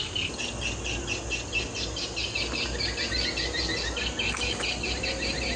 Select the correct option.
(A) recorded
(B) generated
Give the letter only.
A